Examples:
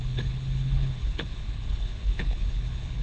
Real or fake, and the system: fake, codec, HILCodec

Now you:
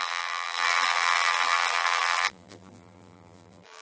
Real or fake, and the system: fake, vocoder, BigVGAN v2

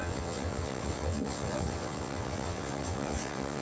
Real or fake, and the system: fake, vocoder, WaveNeXt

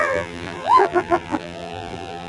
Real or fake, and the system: fake, vocoder, BigVGAN v2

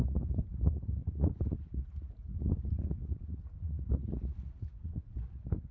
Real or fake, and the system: fake, vocoder, Vocos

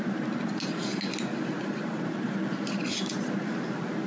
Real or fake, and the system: real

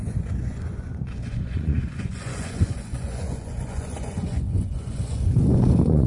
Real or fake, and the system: fake, vocoder, Vocos